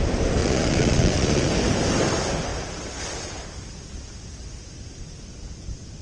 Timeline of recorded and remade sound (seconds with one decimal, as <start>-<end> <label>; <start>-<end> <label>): 0.0-0.4 recorded; 0.4-1.5 remade; 1.5-6.0 recorded